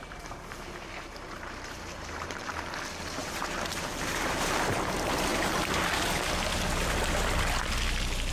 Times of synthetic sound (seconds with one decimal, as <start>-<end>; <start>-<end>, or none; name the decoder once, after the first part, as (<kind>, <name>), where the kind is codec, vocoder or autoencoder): 1.1-2.7 (vocoder, BigVGAN v2); 3.2-4.6; 5.3-6.3